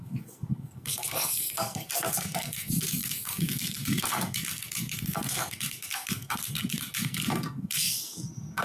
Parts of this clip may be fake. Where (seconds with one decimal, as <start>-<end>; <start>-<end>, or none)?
0.0-8.6